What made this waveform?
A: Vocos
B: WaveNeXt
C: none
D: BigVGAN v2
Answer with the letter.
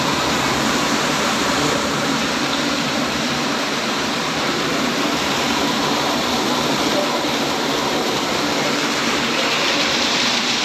D